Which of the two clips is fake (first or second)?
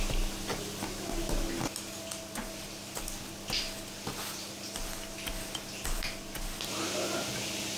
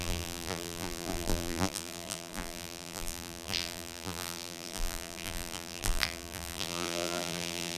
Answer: second